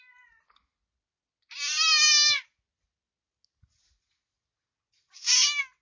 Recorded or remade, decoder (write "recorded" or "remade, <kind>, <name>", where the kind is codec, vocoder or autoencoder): recorded